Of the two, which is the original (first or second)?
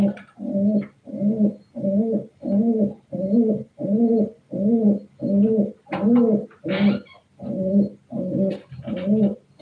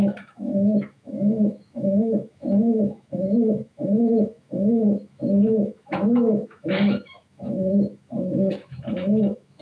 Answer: first